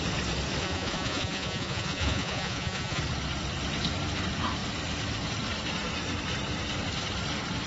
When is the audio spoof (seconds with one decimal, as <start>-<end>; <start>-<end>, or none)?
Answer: 0.6-3.0